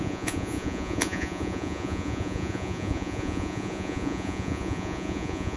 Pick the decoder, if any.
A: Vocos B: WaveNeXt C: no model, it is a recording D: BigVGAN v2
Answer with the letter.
A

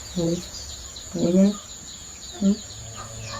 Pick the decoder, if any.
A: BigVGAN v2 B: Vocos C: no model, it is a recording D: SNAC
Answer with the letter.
B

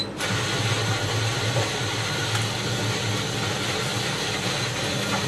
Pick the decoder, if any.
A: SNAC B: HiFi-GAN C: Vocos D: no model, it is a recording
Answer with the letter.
D